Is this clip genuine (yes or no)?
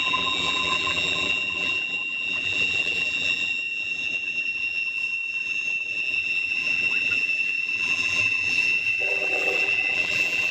no